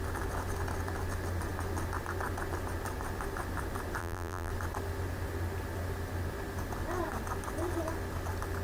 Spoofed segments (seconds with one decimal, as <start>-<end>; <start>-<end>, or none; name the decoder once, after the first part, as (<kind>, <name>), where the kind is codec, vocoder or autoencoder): 4.0-4.5 (vocoder, BigVGAN v2)